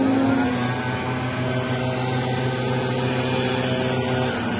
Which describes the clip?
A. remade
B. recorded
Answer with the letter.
B